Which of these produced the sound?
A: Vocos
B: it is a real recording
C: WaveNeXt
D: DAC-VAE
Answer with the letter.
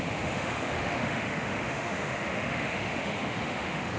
D